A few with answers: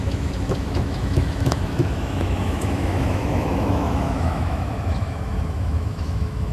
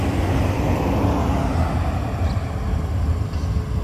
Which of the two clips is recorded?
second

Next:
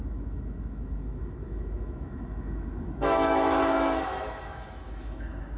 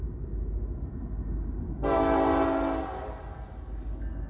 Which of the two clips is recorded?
second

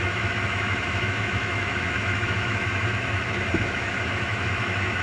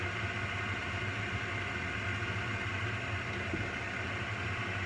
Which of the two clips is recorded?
second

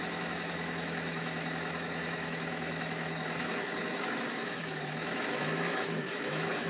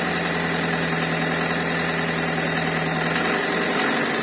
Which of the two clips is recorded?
second